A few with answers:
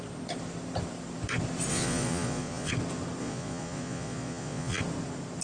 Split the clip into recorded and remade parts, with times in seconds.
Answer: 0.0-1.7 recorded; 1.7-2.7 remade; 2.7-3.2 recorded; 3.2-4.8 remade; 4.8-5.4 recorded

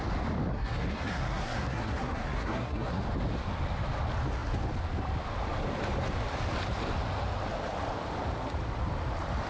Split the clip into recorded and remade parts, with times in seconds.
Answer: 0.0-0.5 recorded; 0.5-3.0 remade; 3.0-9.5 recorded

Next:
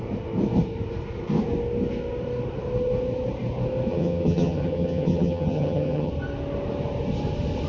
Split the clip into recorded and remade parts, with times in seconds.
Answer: 0.0-3.9 recorded; 3.9-6.1 remade; 6.1-7.7 recorded

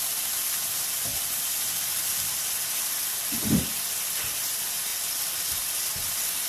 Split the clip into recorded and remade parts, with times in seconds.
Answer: 0.0-6.5 recorded

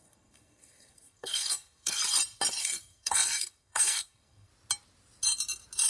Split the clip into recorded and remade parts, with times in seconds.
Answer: 0.0-2.0 remade; 2.0-2.6 recorded; 2.6-4.5 remade; 4.5-5.9 recorded

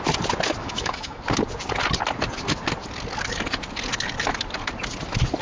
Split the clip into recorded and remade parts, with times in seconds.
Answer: 0.0-0.6 recorded; 0.6-1.2 remade; 1.2-5.4 recorded